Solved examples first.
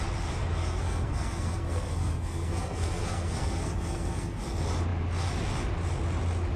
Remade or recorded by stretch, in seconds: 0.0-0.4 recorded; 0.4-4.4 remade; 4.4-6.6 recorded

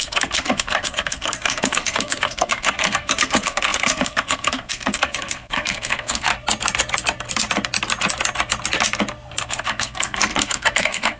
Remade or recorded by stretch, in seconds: 0.0-6.3 remade; 6.3-9.4 recorded; 9.4-11.2 remade

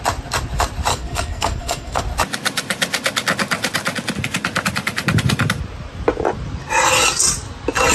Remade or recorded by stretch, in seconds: 0.0-0.9 recorded; 0.9-2.0 remade; 2.0-7.9 recorded

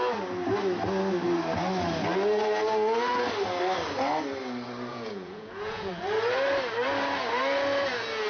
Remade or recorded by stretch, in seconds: 0.0-4.9 recorded; 4.9-5.9 remade; 5.9-8.3 recorded

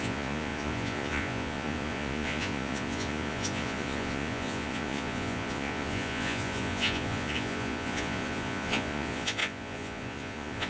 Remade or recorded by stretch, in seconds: 0.0-10.7 remade

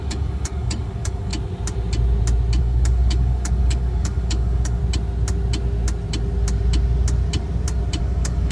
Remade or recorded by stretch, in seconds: 0.0-1.3 remade; 1.3-2.6 recorded; 2.6-4.8 remade; 4.8-8.0 recorded; 8.0-8.5 remade

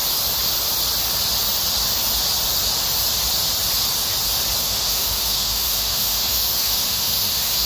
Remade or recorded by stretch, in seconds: 0.0-4.6 recorded; 4.6-7.7 remade